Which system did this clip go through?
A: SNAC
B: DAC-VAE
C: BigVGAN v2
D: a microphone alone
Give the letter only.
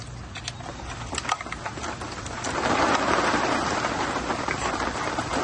D